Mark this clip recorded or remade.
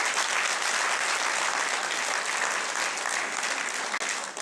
recorded